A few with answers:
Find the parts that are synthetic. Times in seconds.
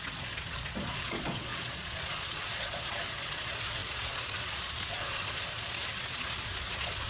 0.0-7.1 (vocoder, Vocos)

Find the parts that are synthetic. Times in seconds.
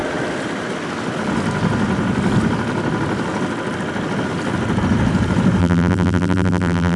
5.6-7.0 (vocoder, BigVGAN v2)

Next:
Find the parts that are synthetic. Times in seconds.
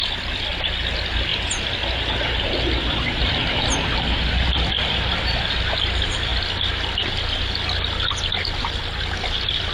none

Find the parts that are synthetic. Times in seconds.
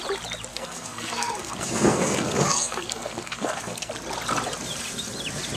0.5-3.9 (codec, SNAC)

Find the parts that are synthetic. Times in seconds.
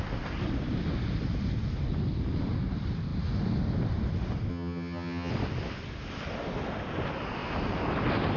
4.5-5.3 (vocoder, HiFi-GAN)